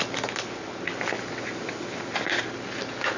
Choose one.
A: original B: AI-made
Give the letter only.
A